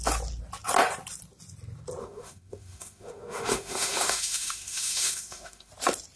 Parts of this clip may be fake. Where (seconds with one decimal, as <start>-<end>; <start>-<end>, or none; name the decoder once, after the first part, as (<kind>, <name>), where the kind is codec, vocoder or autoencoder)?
2.0-5.7 (autoencoder, DAC-VAE)